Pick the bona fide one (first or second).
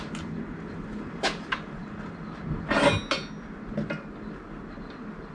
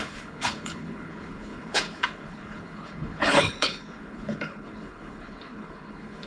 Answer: first